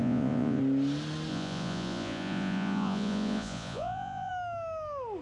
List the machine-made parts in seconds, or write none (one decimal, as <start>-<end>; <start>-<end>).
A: 0.0-0.6; 1.3-4.3